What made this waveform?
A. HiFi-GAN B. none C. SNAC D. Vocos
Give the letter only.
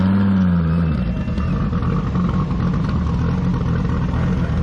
B